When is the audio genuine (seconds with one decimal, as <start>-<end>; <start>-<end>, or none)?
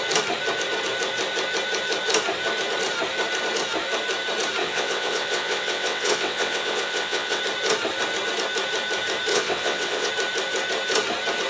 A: 0.0-4.6; 7.4-9.3; 10.1-11.5